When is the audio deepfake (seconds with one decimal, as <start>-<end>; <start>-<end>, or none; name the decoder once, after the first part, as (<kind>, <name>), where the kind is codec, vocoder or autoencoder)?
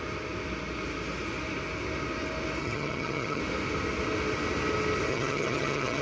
2.6-3.4 (vocoder, HiFi-GAN); 5.1-6.0